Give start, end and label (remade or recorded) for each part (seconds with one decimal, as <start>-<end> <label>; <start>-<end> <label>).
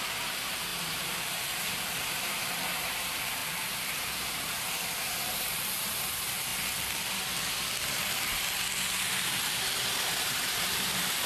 0.0-6.5 remade; 6.5-9.1 recorded; 9.1-11.3 remade